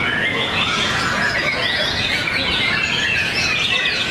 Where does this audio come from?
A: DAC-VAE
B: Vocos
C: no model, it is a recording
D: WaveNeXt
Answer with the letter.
B